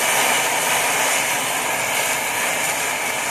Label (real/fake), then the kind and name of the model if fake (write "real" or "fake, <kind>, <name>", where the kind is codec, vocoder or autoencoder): real